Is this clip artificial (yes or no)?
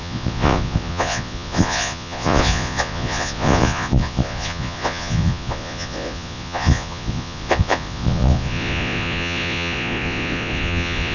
yes